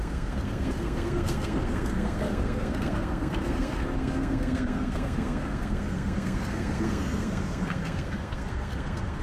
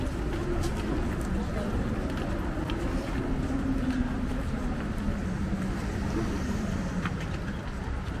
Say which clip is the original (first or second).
second